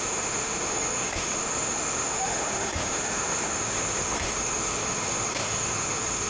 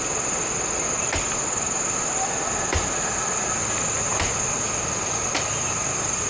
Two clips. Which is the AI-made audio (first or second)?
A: first